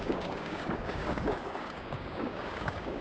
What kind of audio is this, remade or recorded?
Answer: remade